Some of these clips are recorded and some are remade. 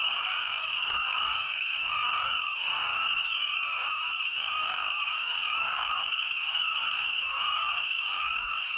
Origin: remade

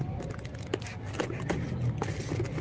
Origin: recorded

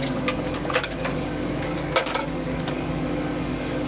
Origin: remade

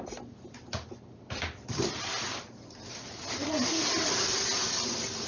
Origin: recorded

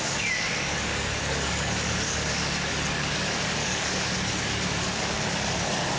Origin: remade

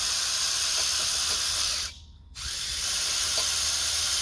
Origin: recorded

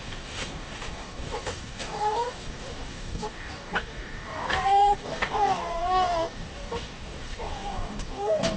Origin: remade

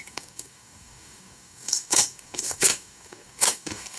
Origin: remade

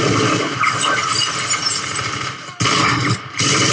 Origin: recorded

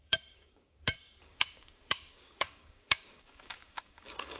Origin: remade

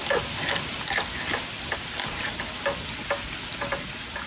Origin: recorded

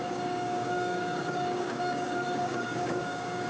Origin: remade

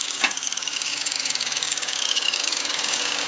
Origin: remade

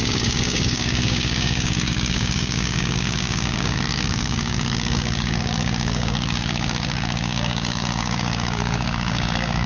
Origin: remade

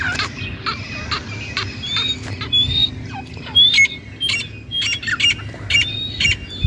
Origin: recorded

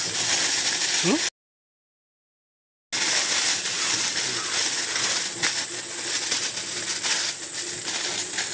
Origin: recorded